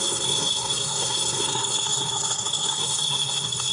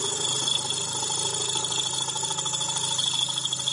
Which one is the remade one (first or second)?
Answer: first